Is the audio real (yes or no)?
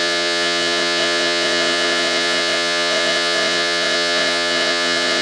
no